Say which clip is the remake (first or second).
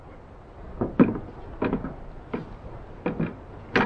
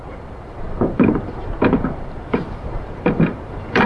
second